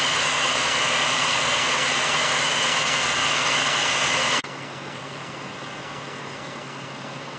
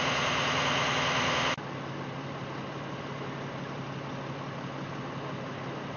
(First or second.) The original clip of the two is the second